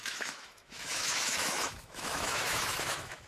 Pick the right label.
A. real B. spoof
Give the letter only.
B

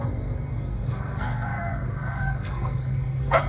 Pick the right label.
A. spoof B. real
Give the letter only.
A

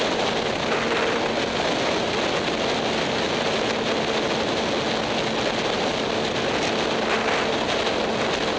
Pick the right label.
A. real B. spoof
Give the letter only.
A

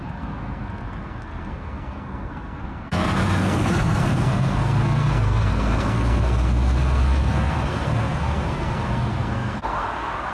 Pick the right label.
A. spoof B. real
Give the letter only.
A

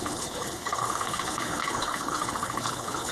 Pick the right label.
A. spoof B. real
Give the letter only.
A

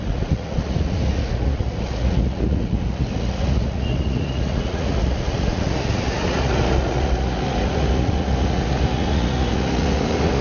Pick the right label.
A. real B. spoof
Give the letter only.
B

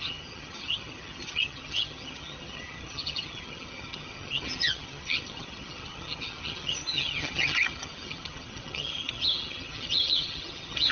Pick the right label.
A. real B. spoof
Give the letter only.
B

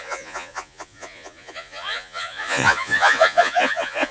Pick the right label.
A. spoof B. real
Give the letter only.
A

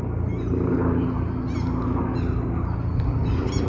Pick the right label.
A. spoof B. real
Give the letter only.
B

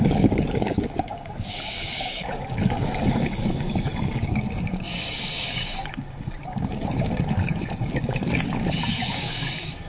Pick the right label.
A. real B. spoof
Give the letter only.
B